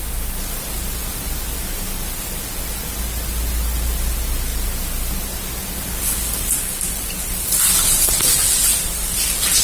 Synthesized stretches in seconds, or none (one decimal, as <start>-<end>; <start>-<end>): none